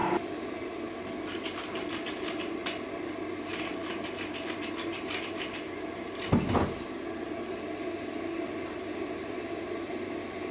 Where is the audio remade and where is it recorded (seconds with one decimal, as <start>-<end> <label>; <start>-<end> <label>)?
0.0-10.5 recorded